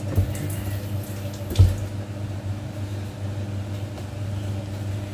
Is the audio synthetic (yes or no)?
no